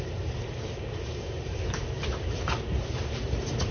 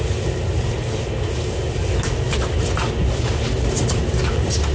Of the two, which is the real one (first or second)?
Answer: second